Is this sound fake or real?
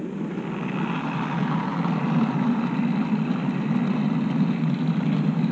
real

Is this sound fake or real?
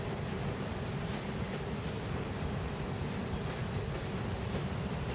real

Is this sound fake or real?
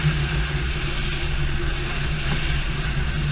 real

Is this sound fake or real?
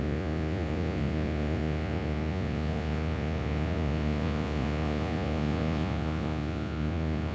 fake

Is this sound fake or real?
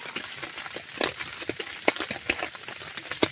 real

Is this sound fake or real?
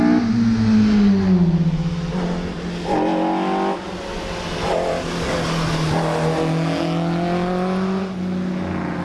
real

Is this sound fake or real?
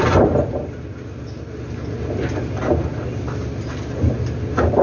real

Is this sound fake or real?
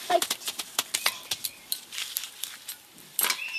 real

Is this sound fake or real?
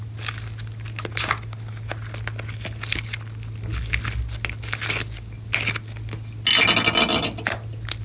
real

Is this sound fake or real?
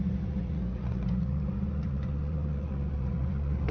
fake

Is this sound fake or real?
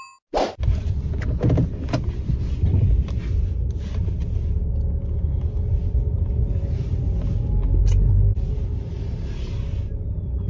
real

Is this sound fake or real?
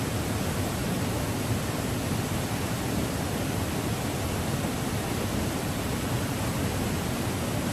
real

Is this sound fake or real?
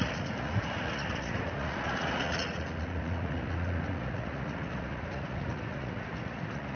fake